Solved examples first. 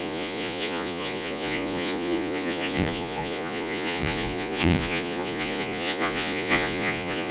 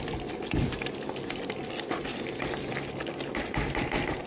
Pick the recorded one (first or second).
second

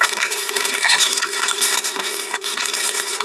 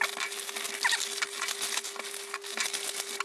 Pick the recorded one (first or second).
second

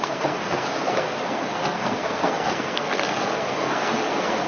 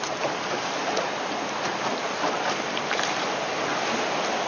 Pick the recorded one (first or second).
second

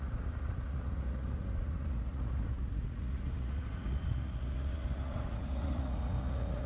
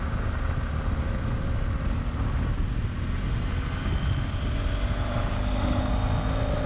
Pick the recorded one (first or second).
second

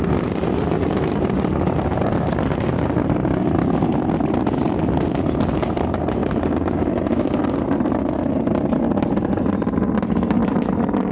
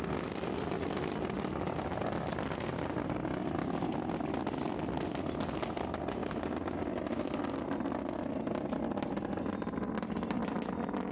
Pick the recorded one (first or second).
second